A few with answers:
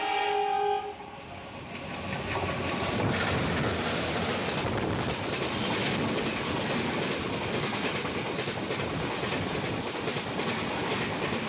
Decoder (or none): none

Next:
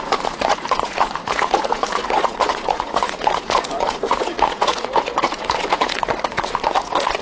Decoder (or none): vocoder, Vocos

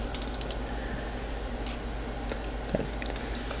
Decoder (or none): none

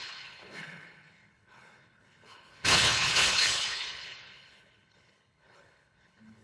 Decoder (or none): codec, HILCodec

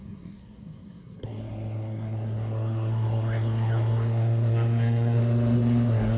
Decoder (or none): codec, SNAC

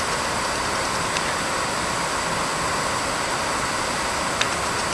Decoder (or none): none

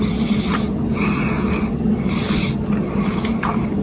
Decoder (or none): none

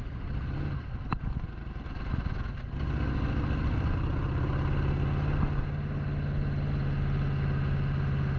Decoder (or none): none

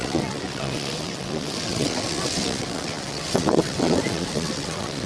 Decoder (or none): vocoder, WaveNeXt